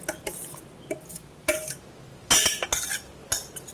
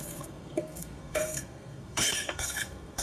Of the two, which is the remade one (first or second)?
second